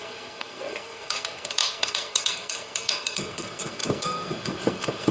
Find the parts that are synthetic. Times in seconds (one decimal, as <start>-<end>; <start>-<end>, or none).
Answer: 0.0-5.1